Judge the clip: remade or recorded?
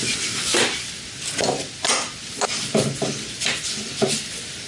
remade